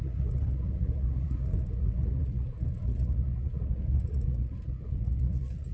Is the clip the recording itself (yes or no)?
no